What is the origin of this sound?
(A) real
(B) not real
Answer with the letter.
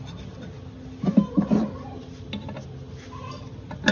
A